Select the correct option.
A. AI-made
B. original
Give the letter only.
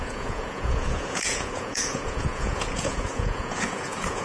A